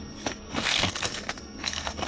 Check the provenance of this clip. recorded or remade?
remade